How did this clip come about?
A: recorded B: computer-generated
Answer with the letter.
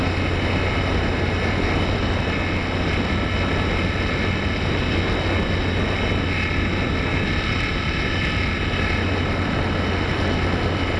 A